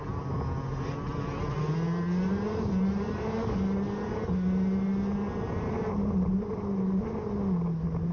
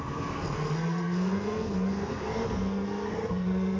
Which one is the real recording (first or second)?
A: first